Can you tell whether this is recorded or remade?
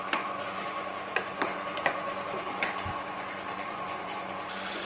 remade